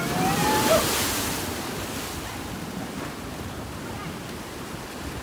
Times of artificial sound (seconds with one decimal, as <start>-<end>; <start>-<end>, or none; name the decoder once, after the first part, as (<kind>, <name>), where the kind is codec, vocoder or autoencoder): none